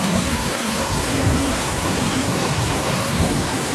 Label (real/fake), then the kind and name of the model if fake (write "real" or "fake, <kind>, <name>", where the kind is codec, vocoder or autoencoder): fake, codec, SNAC